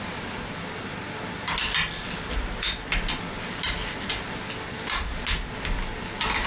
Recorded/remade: recorded